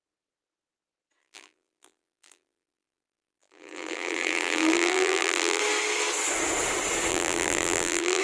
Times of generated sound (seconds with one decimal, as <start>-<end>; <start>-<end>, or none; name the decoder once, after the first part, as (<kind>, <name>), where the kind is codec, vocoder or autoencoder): 1.2-5.6 (vocoder, BigVGAN v2); 7.1-8.2